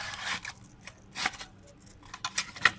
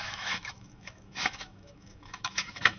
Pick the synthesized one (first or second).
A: second